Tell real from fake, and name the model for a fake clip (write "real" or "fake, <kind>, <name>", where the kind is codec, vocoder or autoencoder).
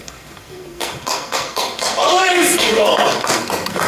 fake, codec, SNAC